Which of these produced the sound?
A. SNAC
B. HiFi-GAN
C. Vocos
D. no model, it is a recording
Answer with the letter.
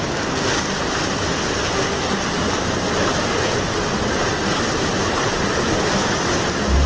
D